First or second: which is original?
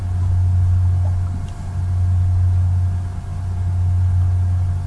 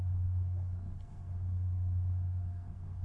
first